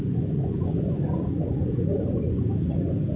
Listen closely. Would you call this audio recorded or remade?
remade